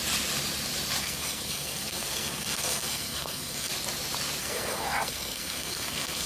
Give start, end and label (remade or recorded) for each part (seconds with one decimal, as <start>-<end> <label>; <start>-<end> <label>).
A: 0.0-1.0 recorded; 1.0-3.7 remade; 3.7-4.4 recorded; 4.4-6.3 remade